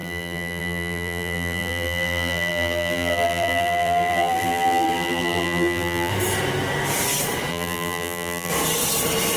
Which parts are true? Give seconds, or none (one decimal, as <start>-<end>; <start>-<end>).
6.1-7.5; 8.5-9.4